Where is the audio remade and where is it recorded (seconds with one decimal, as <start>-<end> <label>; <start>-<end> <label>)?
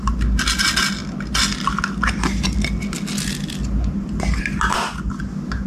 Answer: 0.0-5.7 recorded